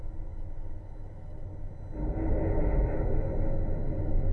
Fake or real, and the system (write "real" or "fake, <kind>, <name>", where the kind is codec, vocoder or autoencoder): real